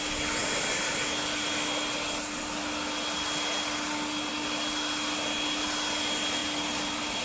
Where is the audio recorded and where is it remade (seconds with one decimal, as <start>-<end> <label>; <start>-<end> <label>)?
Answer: 0.0-7.2 recorded